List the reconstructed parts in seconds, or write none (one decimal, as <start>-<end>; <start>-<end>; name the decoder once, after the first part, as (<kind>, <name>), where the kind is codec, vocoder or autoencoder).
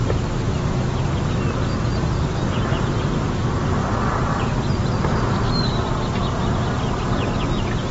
3.8-5.9 (vocoder, BigVGAN v2)